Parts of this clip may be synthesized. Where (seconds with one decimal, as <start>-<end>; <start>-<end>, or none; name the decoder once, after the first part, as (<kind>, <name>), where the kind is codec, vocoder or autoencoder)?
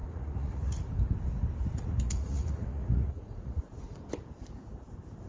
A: 0.0-0.8 (vocoder, Vocos); 1.7-4.0